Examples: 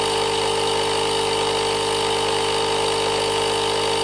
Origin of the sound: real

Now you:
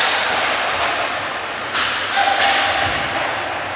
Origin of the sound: real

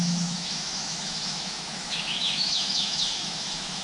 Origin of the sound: fake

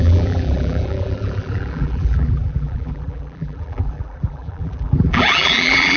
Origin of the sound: fake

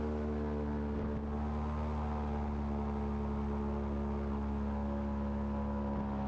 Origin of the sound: real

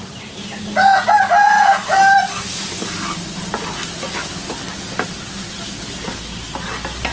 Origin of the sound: real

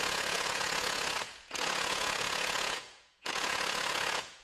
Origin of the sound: fake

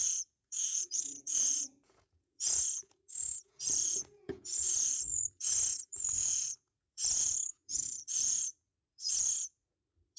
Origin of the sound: fake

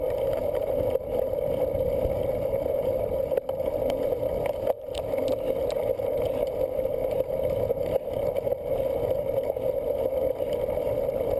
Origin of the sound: real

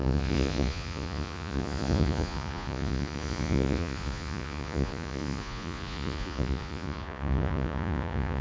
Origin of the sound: fake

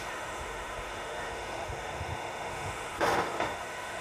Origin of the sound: fake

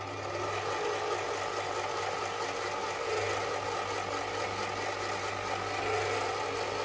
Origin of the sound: real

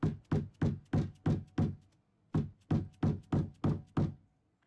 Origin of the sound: real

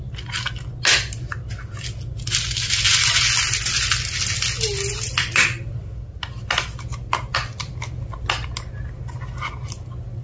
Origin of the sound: real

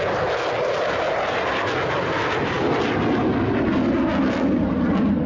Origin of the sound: real